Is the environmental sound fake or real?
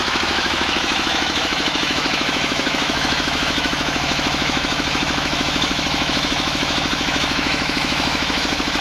fake